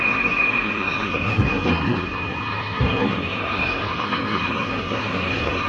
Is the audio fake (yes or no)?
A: yes